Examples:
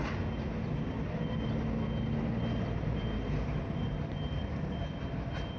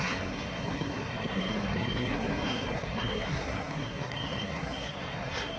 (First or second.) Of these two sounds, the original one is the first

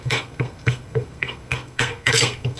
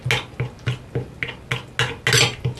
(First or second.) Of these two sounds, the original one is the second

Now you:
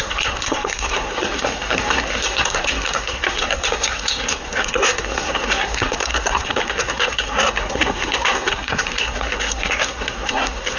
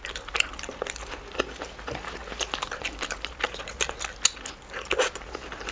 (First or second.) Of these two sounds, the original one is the second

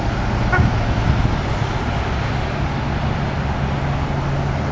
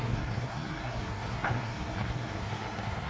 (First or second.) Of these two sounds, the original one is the first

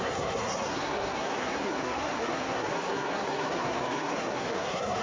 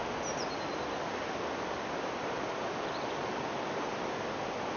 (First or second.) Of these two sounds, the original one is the second